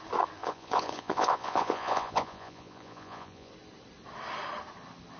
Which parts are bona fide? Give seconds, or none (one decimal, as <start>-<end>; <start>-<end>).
0.0-0.4; 3.5-5.2